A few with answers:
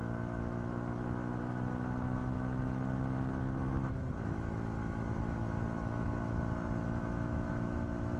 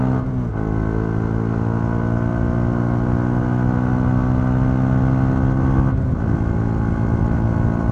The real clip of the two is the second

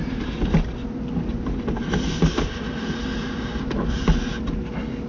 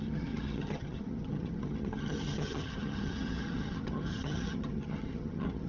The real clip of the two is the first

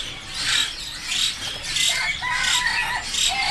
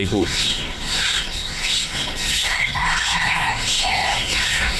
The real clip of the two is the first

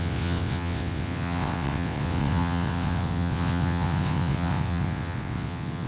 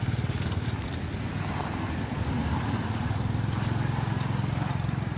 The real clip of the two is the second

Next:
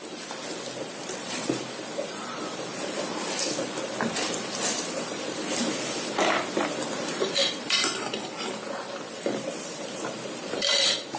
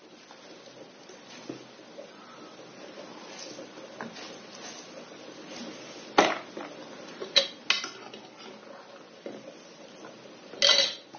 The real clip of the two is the second